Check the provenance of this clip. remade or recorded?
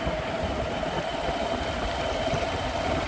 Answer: recorded